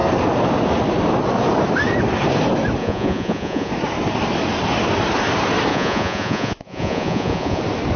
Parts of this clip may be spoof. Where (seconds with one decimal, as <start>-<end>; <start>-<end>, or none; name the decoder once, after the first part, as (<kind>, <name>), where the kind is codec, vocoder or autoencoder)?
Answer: 2.8-3.7 (vocoder, Vocos); 5.7-7.6